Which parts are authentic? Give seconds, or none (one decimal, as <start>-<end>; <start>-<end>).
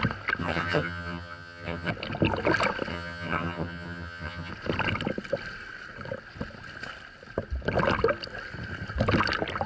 0.0-0.4; 1.9-2.9; 4.5-9.7